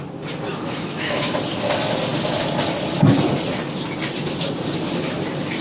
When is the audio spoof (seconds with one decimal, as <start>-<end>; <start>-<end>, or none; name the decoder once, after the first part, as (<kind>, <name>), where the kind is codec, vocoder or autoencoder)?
0.5-1.4 (autoencoder, DAC-VAE)